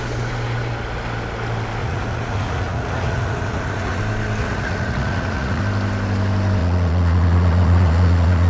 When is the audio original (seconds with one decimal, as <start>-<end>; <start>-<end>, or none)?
0.0-1.8; 4.0-4.4; 5.6-6.6